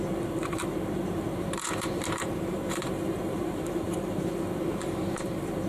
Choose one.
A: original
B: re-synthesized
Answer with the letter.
B